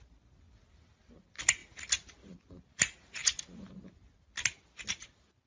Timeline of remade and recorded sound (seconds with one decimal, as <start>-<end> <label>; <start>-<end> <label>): 0.0-5.5 recorded